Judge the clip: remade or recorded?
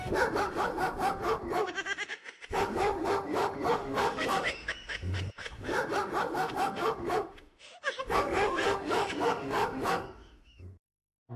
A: remade